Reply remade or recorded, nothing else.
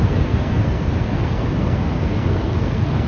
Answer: remade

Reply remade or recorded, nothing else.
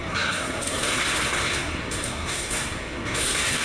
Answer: remade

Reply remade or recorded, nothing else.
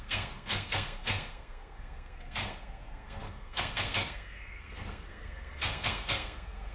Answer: remade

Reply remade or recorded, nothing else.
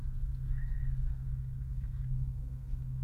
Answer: remade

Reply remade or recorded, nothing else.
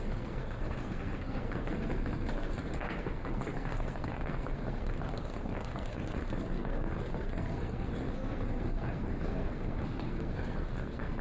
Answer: remade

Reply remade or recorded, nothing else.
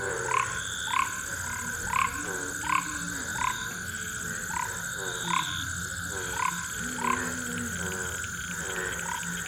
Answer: recorded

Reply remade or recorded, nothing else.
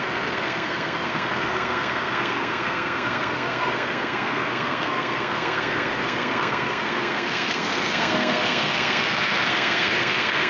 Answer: remade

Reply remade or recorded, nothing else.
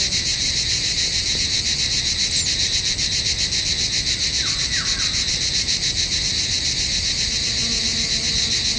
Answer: recorded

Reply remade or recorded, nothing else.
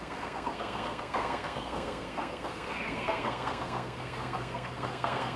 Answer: remade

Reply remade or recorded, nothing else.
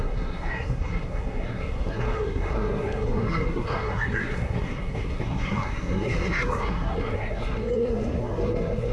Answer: remade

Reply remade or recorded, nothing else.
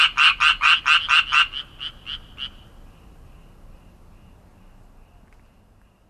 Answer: recorded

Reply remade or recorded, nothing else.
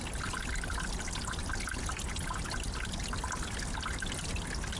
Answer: recorded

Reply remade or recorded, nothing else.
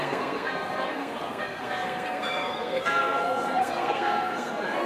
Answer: remade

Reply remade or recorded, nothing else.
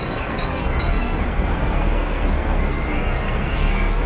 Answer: remade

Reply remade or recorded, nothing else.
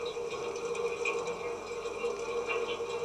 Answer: recorded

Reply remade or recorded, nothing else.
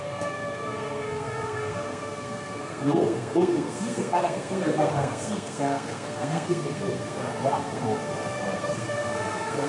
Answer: remade